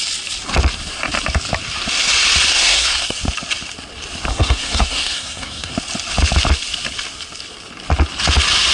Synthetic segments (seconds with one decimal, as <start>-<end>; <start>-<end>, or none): 2.5-3.2; 4.3-5.7